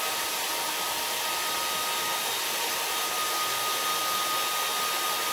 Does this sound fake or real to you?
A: real